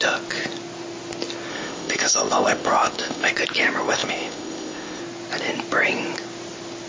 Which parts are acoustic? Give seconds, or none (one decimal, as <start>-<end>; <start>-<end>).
0.0-1.5; 3.3-3.8; 5.0-6.9